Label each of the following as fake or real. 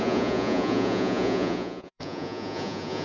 fake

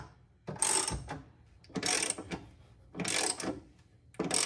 real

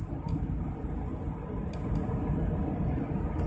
real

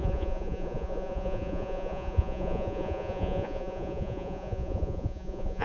fake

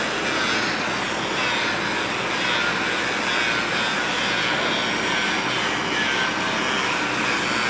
real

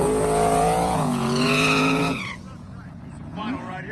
fake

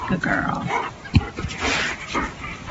real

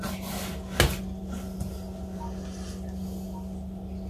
real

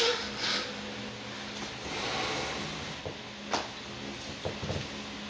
real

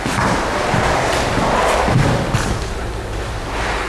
real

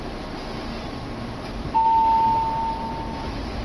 real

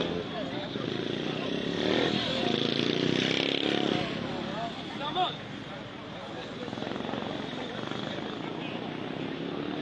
real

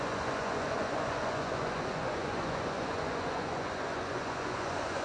fake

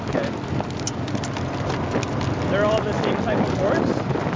real